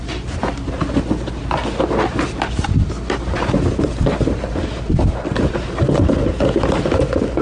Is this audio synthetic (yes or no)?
no